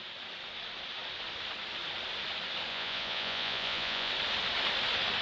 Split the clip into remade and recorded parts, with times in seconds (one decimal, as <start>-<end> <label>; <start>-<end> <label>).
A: 0.0-2.7 recorded; 2.7-4.1 remade; 4.1-5.2 recorded